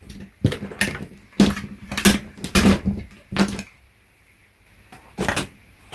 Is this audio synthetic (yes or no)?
no